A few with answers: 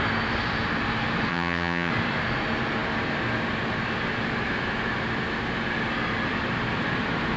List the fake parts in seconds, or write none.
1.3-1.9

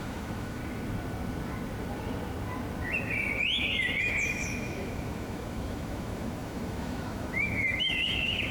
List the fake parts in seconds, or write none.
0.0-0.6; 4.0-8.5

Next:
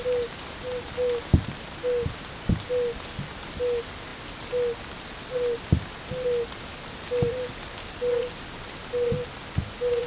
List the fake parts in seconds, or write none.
none